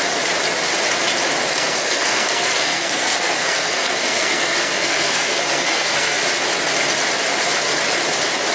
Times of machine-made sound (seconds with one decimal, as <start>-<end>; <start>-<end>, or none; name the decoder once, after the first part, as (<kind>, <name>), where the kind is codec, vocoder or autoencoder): 1.5-6.2 (codec, SNAC)